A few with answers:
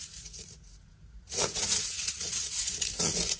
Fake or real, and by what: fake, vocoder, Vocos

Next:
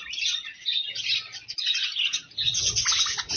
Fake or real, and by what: real